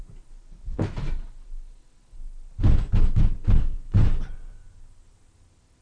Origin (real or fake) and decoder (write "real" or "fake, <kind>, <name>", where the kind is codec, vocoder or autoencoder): real